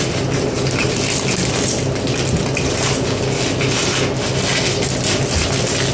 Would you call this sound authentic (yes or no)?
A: yes